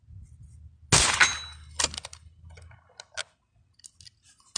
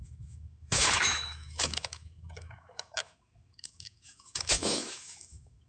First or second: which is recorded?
first